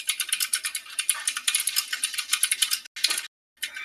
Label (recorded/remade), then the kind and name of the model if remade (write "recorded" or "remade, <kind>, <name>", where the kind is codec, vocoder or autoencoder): recorded